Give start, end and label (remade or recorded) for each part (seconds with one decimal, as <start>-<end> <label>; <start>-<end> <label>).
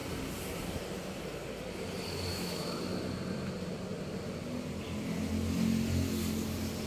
0.0-2.3 recorded; 2.3-2.8 remade; 2.8-6.9 recorded